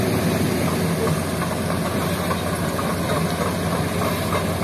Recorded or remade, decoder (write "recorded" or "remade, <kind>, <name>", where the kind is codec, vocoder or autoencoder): recorded